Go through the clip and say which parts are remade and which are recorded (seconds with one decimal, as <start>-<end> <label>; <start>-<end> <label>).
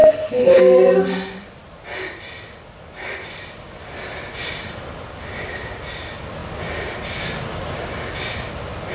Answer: 0.0-0.6 remade; 0.6-8.9 recorded